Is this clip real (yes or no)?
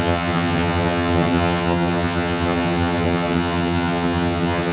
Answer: no